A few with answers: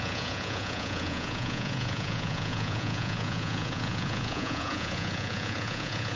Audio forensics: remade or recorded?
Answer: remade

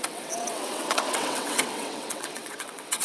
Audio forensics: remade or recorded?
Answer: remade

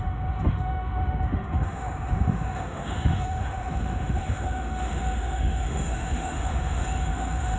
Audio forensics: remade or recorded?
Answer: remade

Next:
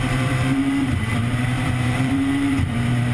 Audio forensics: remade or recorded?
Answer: remade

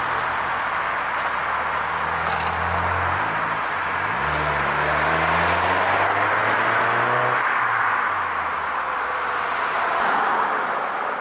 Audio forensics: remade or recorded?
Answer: recorded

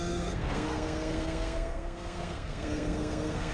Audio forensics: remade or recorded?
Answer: remade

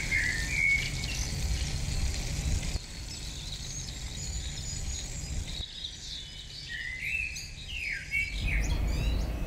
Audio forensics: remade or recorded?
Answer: recorded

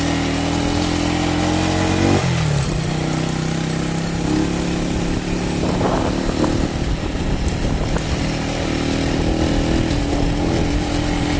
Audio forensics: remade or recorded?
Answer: recorded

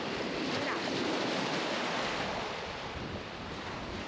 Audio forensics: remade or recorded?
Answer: remade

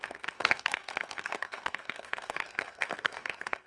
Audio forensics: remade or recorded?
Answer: remade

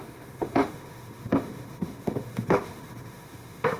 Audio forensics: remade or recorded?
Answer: remade